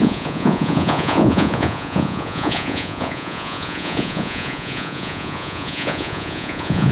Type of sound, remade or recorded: remade